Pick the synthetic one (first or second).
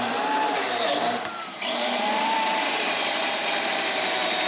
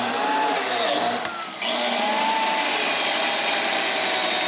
first